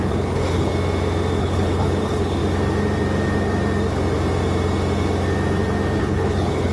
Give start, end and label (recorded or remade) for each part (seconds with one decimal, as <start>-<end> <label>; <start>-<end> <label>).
0.0-0.7 remade; 0.7-1.4 recorded; 1.4-2.4 remade; 2.4-6.0 recorded; 6.0-6.7 remade